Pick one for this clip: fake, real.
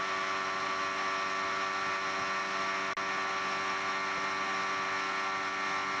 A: real